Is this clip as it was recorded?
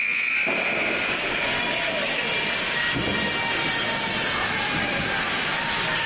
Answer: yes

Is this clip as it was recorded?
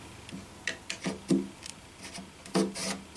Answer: yes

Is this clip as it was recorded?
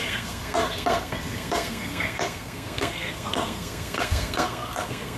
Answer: no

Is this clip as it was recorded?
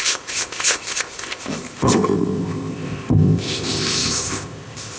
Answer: no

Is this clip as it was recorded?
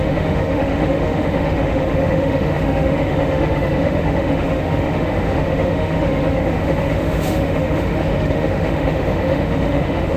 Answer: no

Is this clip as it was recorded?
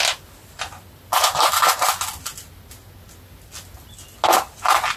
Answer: yes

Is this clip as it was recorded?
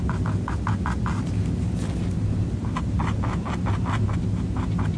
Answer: yes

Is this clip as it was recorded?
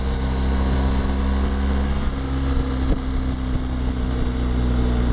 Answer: yes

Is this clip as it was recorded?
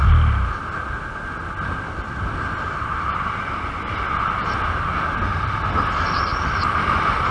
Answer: yes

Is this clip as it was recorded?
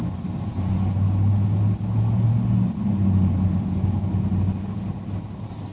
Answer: yes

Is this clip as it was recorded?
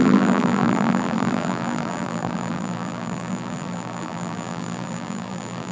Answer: no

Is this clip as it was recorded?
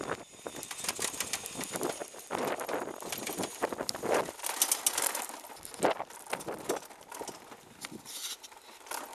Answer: yes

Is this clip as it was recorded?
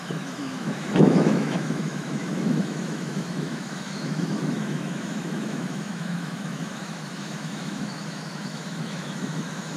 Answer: no